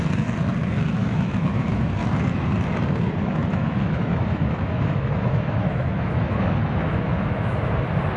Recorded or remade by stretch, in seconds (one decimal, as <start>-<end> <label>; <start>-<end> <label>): 0.0-1.0 recorded; 1.0-1.8 remade; 1.8-3.4 recorded; 3.4-7.7 remade; 7.7-8.2 recorded